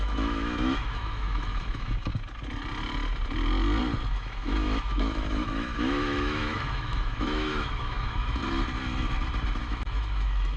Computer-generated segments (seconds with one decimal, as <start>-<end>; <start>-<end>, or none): 0.0-2.1; 4.1-8.4; 9.6-10.6